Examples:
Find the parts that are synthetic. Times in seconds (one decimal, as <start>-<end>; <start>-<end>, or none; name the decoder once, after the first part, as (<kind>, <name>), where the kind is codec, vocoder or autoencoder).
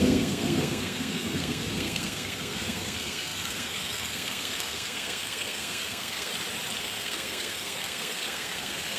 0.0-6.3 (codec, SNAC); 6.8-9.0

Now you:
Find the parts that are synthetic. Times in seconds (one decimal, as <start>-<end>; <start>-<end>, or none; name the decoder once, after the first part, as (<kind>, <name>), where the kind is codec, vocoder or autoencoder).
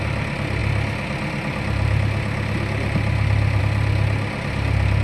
none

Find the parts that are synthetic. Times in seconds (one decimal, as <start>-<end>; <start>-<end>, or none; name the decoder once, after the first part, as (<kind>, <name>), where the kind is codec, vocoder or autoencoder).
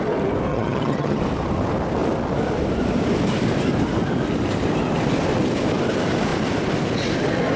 0.5-1.2 (vocoder, HiFi-GAN)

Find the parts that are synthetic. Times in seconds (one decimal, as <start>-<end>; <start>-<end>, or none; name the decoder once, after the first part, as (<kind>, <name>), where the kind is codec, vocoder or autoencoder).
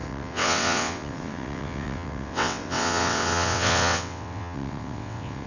0.0-5.5 (vocoder, WaveNeXt)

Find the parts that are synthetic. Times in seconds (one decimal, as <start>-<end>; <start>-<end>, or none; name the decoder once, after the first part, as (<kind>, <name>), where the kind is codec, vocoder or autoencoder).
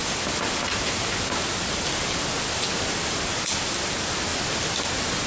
none